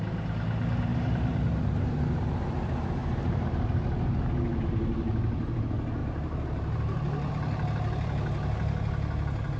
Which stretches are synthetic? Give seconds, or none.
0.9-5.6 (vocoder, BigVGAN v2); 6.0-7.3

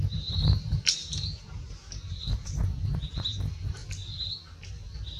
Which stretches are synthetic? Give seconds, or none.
0.0-1.8 (vocoder, BigVGAN v2); 3.1-3.8

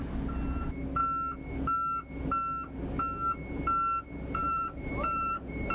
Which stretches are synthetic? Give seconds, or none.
4.4-5.7 (vocoder, BigVGAN v2)

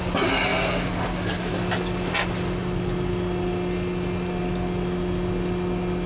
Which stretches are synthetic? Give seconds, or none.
none

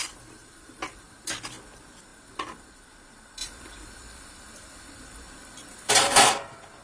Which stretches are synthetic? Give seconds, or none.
0.4-1.0 (vocoder, BigVGAN v2); 3.4-5.9

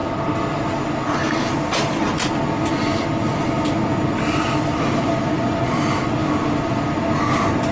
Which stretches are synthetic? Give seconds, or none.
none

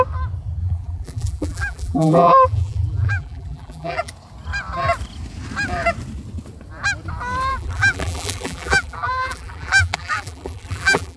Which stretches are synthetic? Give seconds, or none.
0.6-4.1 (vocoder, BigVGAN v2); 7.5-11.2

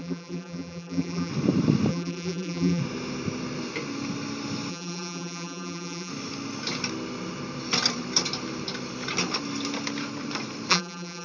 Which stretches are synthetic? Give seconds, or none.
0.0-1.3 (vocoder, BigVGAN v2); 1.9-2.8; 4.7-6.1; 10.7-11.2